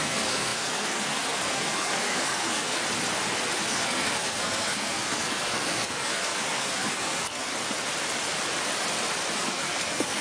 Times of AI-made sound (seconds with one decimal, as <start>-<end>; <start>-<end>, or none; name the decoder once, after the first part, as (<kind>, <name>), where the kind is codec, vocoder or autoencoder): 0.0-2.8 (codec, SNAC); 3.6-7.5; 9.4-10.2